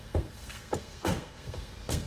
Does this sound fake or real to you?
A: fake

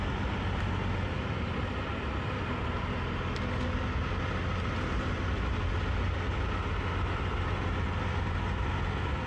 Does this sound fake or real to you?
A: real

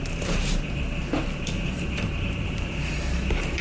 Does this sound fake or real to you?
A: fake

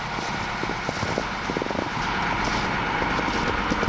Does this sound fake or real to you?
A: real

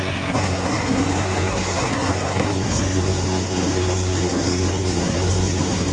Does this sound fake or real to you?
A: fake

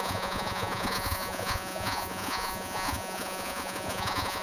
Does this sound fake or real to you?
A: fake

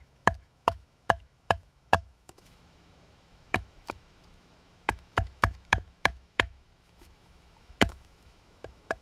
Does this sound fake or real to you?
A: fake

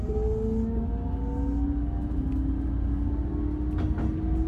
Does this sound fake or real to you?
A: real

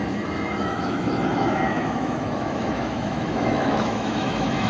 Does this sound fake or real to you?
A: fake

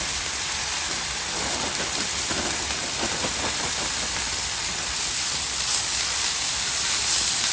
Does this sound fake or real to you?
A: fake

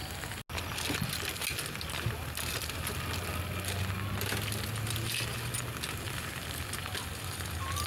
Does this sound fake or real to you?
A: real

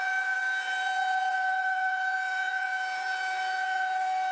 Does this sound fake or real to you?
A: fake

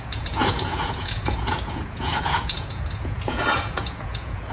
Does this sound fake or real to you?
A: fake